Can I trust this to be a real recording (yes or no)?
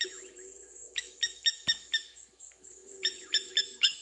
no